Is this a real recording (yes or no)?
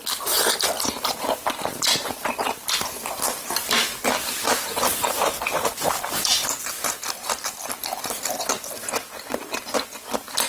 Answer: yes